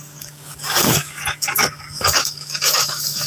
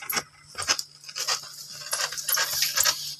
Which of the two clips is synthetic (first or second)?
first